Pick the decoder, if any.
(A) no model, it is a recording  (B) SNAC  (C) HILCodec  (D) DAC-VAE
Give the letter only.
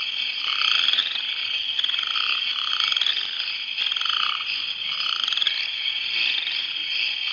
A